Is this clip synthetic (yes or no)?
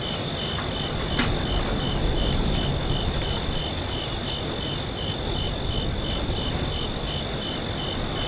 no